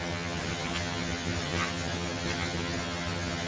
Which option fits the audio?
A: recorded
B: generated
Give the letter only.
B